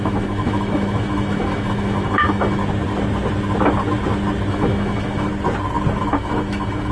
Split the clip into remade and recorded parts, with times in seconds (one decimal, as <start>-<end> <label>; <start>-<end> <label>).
0.0-2.6 remade; 2.6-4.5 recorded; 4.5-5.3 remade; 5.3-6.0 recorded; 6.0-6.9 remade